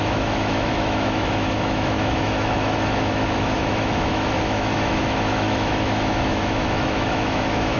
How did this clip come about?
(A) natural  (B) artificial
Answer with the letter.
B